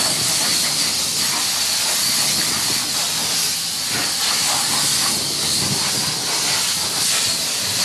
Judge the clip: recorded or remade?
recorded